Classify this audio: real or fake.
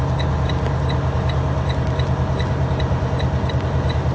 real